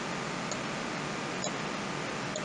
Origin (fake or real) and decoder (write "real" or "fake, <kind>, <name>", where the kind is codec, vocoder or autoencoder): real